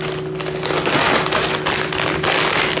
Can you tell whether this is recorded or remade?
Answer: recorded